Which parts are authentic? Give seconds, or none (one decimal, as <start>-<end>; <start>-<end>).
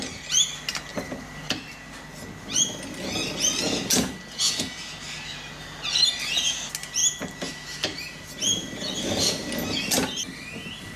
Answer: 0.0-11.0